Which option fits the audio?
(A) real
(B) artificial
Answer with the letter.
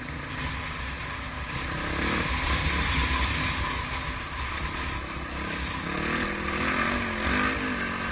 A